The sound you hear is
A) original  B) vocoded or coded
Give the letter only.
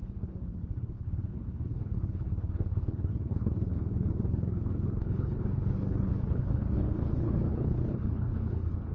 B